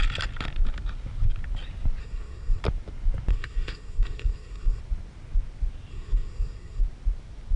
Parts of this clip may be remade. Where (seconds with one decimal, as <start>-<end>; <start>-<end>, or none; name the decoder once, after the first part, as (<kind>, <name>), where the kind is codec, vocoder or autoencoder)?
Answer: 2.0-2.6 (codec, SNAC); 3.3-4.8; 5.9-6.8